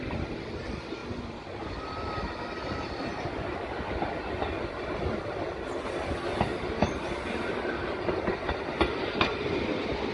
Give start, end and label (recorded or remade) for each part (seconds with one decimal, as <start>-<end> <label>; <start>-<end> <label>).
0.0-10.1 recorded